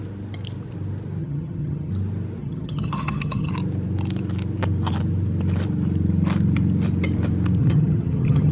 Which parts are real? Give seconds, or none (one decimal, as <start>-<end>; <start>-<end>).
0.0-1.2; 1.9-2.4; 3.5-7.6

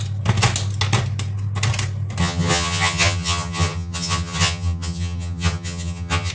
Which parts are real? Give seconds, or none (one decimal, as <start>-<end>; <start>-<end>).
0.0-2.2